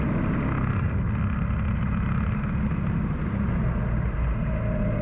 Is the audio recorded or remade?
recorded